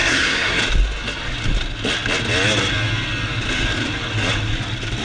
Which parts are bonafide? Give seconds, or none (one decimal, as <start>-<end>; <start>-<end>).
0.6-5.0